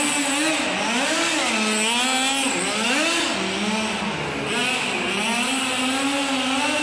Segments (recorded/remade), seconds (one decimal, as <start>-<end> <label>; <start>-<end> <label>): 0.0-6.8 recorded